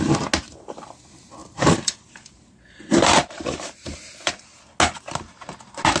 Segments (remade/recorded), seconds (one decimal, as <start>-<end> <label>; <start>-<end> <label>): 0.0-1.4 recorded; 1.4-4.3 remade; 4.3-6.0 recorded